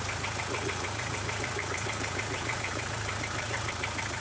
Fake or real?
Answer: fake